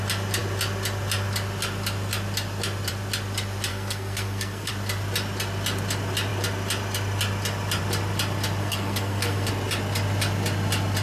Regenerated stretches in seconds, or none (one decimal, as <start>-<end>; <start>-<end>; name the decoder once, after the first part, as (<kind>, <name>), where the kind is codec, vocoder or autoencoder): 3.7-4.7 (codec, SNAC); 8.6-9.5